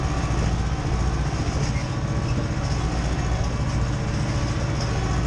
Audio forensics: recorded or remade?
recorded